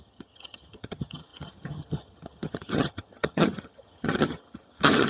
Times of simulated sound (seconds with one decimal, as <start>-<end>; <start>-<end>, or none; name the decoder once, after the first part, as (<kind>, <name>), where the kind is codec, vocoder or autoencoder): 0.0-5.1 (vocoder, HiFi-GAN)